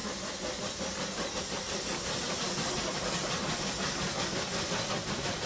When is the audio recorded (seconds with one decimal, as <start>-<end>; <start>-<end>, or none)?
0.0-2.9; 3.7-5.5